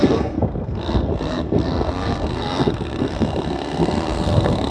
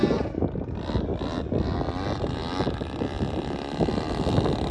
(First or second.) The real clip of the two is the second